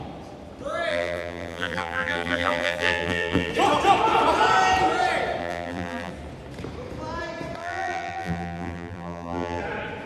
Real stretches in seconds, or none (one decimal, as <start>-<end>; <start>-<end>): 0.0-0.9; 3.5-5.4; 6.1-7.6; 9.6-10.1